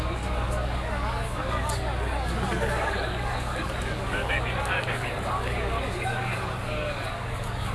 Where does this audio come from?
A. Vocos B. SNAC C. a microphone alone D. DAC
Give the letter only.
D